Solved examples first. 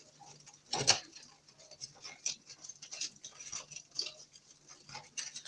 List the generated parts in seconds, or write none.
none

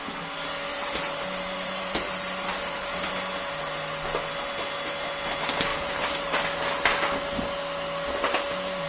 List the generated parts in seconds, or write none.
0.7-3.1 (vocoder, BigVGAN v2); 5.7-6.4

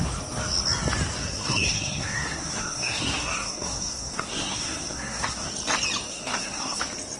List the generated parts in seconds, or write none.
1.2-5.5 (codec, SNAC); 6.1-6.8

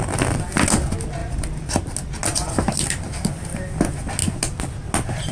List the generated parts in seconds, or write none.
1.2-1.7 (vocoder, BigVGAN v2)

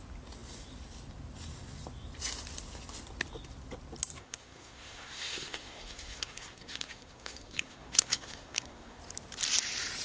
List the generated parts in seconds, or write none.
4.2-9.0 (codec, SNAC)

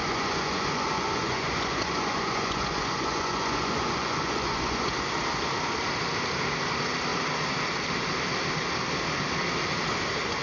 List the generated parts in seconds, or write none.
0.0-4.9 (vocoder, Vocos)

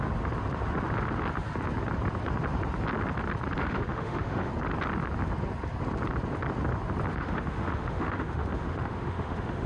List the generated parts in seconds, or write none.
3.6-4.5 (autoencoder, DAC-VAE); 7.1-9.7

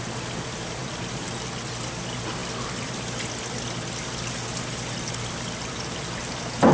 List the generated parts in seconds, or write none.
0.8-1.3 (vocoder, BigVGAN v2)